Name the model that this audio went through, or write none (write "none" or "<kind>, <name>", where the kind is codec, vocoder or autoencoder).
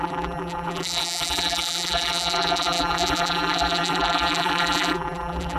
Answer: vocoder, BigVGAN v2